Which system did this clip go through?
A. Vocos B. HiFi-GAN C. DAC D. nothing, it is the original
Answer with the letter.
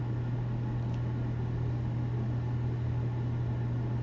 D